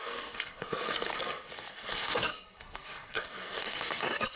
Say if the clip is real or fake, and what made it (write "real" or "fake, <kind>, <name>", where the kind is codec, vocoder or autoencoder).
fake, codec, SNAC